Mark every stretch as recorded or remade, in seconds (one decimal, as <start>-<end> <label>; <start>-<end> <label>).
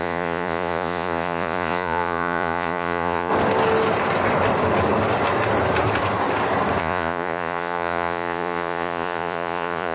0.0-3.3 remade; 3.3-6.8 recorded; 6.8-9.9 remade